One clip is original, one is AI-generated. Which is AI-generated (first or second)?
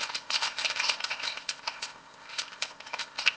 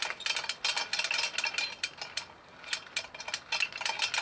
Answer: first